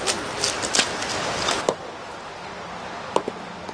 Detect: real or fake real